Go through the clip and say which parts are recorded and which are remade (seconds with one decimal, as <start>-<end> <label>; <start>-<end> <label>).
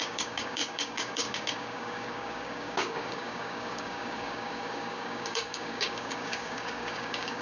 0.0-7.4 remade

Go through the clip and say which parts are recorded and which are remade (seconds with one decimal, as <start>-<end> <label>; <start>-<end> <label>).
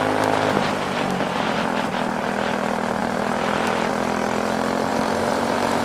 0.0-3.0 recorded; 3.0-3.9 remade; 3.9-4.9 recorded; 4.9-5.8 remade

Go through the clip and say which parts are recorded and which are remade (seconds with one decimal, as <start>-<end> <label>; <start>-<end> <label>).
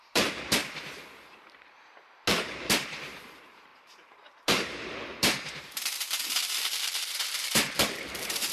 0.0-0.6 remade; 0.6-2.6 recorded; 2.6-8.5 remade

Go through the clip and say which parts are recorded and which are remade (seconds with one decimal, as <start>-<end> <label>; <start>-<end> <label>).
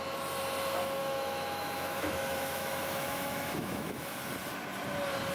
0.0-1.0 recorded; 1.0-4.2 remade; 4.2-5.3 recorded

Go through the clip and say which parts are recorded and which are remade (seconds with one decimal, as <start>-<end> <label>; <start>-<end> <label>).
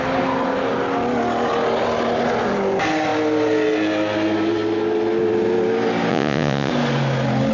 0.0-6.1 recorded; 6.1-6.7 remade; 6.7-7.5 recorded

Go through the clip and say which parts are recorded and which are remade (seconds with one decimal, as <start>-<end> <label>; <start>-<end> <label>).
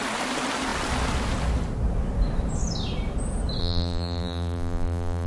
0.0-3.6 recorded; 3.6-5.3 remade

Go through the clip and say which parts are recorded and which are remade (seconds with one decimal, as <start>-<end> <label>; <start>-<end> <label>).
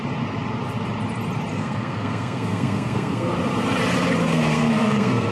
0.0-1.5 recorded; 1.5-3.3 remade; 3.3-4.2 recorded; 4.2-5.3 remade